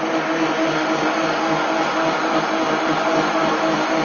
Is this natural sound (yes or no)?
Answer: yes